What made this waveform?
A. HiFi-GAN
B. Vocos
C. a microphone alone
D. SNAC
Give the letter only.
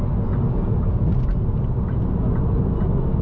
C